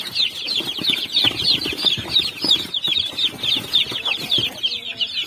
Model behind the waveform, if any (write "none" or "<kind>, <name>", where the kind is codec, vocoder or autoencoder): none